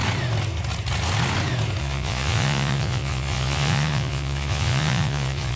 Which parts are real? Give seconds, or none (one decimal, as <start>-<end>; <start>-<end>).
0.0-1.8